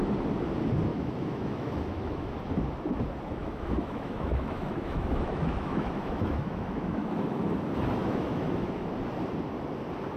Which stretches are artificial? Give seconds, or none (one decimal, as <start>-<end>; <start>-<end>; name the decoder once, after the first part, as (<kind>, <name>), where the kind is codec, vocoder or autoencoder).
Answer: 0.9-2.3 (autoencoder, DAC-VAE); 3.4-7.4; 8.0-8.9